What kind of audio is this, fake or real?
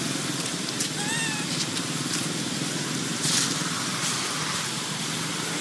real